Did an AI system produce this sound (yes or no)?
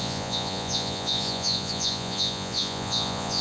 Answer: yes